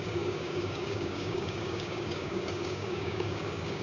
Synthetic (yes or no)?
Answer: yes